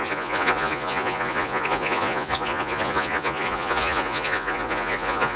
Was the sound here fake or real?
fake